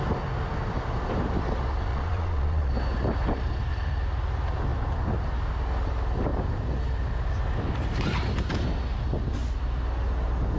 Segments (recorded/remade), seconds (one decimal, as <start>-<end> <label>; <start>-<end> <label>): 0.0-1.9 recorded; 1.9-2.7 remade; 2.7-10.6 recorded